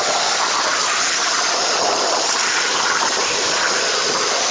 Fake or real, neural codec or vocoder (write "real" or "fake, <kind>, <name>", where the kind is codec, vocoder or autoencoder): real